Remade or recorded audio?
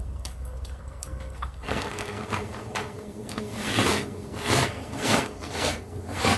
remade